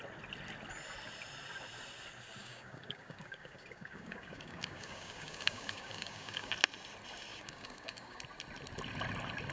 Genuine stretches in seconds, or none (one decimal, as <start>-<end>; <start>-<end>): 0.0-2.4; 6.5-7.3; 8.2-9.5

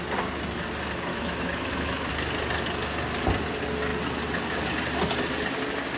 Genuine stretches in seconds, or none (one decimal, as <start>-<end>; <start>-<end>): 0.0-1.1; 2.1-6.0